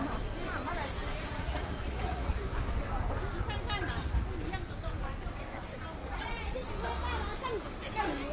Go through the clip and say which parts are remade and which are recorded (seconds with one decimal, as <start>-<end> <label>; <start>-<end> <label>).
0.0-1.4 recorded; 1.4-2.3 remade; 2.3-6.0 recorded; 6.0-6.7 remade; 6.7-8.3 recorded